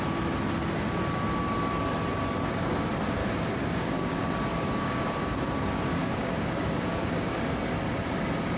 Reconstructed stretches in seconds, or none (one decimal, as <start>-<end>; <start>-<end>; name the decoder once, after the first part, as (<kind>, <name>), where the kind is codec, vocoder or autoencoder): 3.2-4.1 (codec, DAC); 4.5-7.4